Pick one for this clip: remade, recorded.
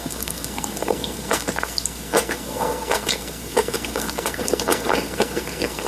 remade